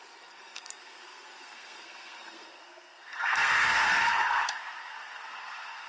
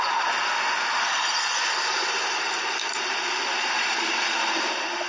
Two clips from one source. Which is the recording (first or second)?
second